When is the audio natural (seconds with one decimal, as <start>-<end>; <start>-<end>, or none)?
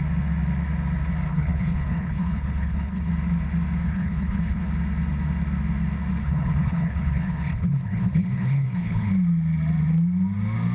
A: 0.0-1.3; 3.1-3.8; 4.7-6.2; 9.1-10.7